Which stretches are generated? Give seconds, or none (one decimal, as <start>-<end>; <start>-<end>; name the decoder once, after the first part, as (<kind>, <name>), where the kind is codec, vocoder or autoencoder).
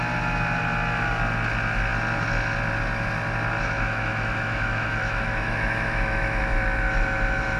3.6-6.4 (autoencoder, DAC-VAE)